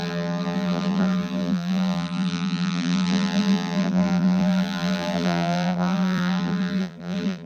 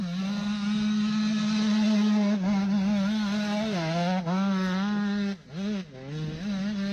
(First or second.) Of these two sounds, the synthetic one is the first